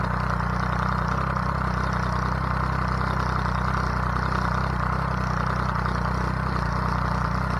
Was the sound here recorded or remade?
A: recorded